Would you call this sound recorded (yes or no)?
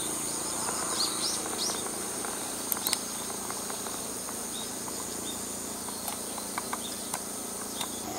yes